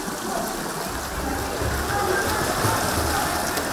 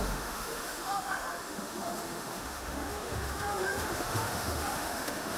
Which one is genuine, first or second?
first